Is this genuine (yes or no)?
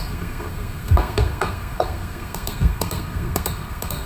no